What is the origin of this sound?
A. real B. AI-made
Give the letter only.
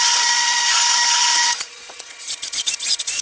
B